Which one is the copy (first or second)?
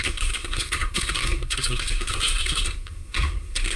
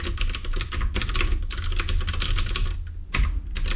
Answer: first